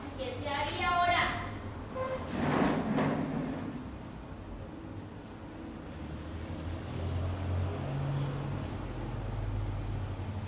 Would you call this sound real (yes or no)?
yes